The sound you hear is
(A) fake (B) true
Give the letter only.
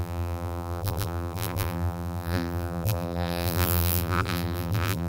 A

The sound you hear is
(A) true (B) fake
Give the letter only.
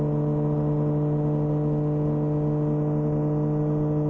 A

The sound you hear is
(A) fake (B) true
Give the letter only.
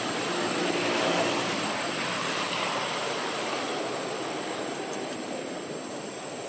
B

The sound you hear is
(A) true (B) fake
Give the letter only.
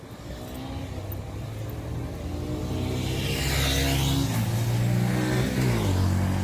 A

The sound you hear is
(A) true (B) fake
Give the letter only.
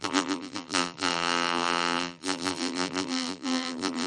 B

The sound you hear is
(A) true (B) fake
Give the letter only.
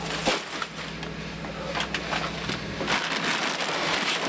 A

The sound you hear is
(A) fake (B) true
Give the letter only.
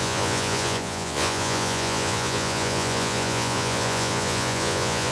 A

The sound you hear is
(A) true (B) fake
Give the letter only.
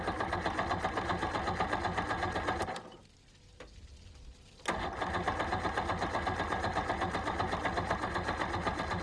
A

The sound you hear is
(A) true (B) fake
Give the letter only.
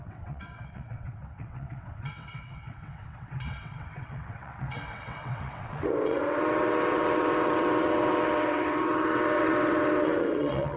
B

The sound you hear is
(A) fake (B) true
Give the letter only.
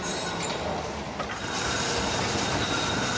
B